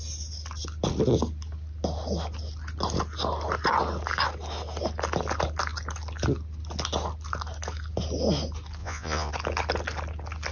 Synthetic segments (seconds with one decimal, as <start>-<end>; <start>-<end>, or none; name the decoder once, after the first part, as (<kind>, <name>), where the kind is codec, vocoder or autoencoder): 8.8-9.3 (vocoder, Vocos)